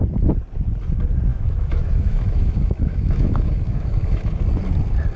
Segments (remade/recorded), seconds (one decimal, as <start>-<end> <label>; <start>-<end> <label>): 0.0-1.3 recorded; 1.3-4.4 remade; 4.4-5.2 recorded